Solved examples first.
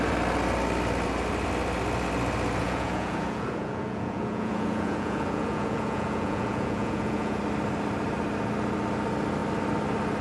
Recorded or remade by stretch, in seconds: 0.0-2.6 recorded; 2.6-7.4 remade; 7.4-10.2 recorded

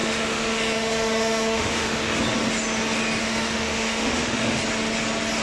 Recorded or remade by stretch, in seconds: 0.0-2.2 remade; 2.2-3.2 recorded; 3.2-4.6 remade; 4.6-5.4 recorded

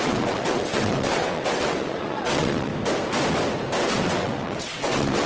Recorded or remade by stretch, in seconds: 0.0-2.7 remade; 2.7-3.8 recorded; 3.8-5.3 remade